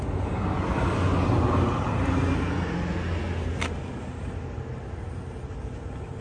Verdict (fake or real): real